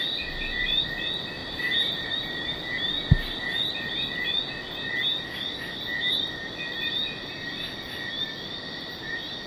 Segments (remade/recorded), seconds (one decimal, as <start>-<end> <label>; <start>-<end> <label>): 0.0-1.4 recorded; 1.4-2.1 remade; 2.1-9.5 recorded